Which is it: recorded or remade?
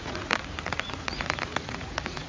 remade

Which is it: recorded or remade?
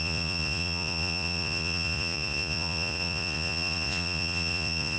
remade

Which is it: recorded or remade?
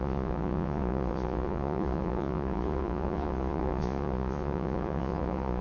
remade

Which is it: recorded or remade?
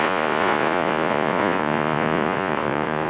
remade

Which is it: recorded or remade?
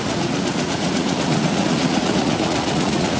remade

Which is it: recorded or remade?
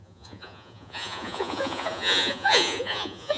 remade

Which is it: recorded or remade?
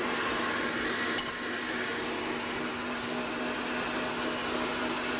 recorded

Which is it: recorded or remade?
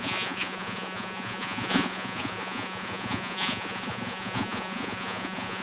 remade